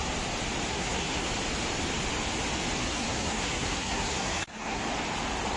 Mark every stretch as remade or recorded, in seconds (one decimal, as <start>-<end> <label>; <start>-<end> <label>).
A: 0.0-0.7 recorded; 0.7-1.3 remade; 1.3-2.8 recorded; 2.8-4.8 remade; 4.8-5.6 recorded